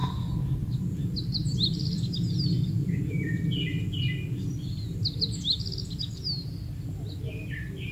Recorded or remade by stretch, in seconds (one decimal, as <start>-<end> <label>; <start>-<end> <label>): 0.0-7.9 recorded